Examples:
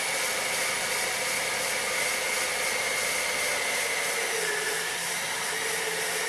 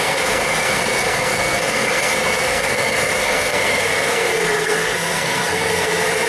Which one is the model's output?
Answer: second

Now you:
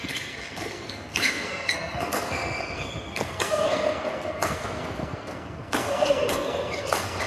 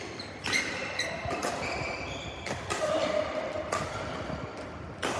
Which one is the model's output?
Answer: first